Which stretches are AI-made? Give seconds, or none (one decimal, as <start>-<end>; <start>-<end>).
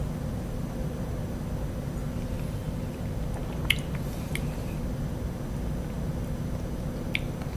none